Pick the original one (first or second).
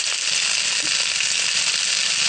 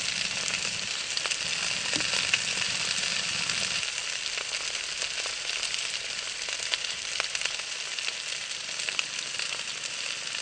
first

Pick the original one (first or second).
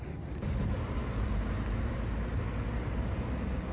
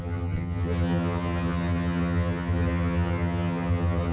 first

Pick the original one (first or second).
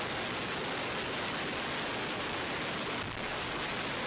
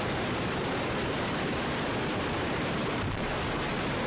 first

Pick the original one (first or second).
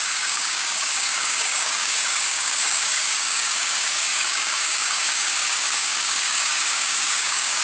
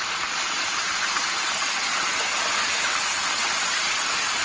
second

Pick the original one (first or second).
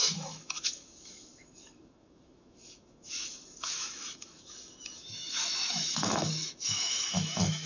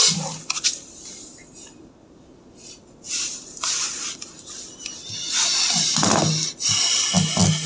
second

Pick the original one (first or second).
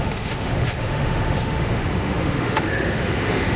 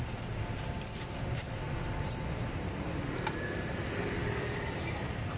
second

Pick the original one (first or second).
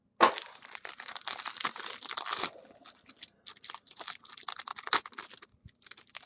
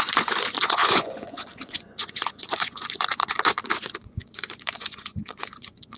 first